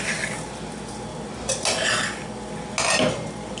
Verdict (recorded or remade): recorded